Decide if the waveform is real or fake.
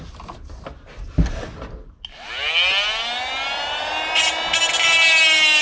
real